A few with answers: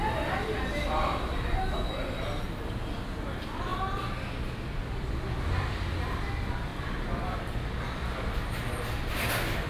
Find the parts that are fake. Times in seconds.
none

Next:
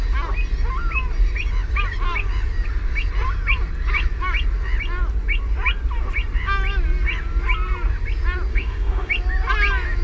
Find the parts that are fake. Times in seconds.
8.5-9.1

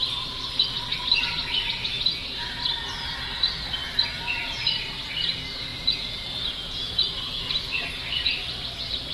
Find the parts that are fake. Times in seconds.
2.1-2.7; 5.7-7.5

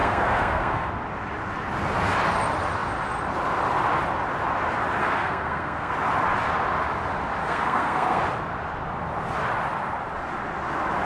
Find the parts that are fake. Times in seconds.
0.0-0.9; 5.0-5.9; 7.4-8.2

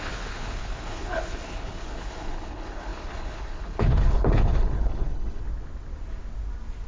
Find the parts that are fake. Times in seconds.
0.0-5.4